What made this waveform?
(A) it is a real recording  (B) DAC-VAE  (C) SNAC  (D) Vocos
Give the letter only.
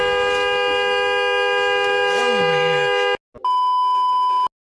A